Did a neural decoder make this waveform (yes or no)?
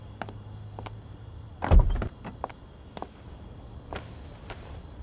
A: no